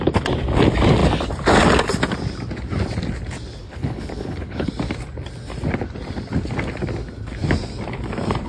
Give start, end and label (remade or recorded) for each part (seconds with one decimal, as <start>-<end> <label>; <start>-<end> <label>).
0.0-3.6 recorded; 3.6-4.7 remade; 4.7-8.5 recorded

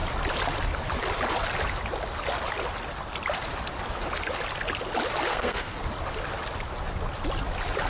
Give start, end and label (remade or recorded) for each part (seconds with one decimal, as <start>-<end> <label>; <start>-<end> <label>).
0.0-5.3 recorded; 5.3-5.9 remade; 5.9-7.9 recorded

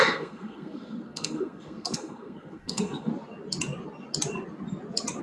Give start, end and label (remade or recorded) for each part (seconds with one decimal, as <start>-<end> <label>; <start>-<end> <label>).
0.0-3.1 remade; 3.1-5.2 recorded

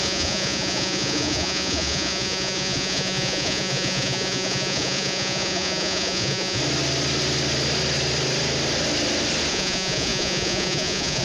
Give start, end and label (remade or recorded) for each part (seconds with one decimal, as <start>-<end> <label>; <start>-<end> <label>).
0.0-6.6 remade; 6.6-9.5 recorded; 9.5-11.2 remade

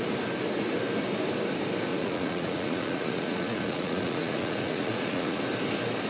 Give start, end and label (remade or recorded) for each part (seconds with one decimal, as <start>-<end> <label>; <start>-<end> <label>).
0.0-1.9 recorded; 1.9-5.4 remade; 5.4-6.1 recorded